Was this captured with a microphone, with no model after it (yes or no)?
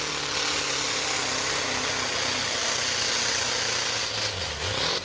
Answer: yes